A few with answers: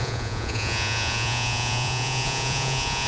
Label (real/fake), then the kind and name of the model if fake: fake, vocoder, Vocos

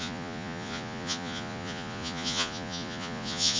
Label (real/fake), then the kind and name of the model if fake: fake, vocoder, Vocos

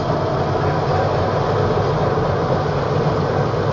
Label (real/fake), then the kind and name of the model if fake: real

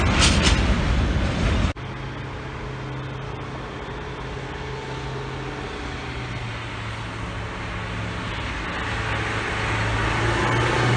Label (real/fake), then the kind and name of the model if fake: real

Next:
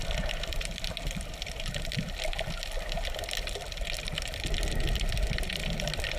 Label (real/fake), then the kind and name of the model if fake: real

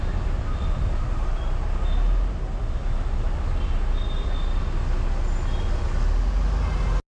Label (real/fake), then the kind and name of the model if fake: real